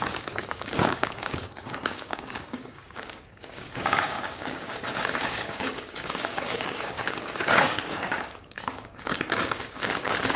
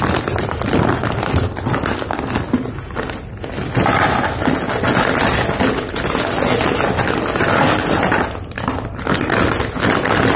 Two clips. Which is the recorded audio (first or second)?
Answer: second